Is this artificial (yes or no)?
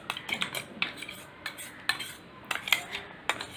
no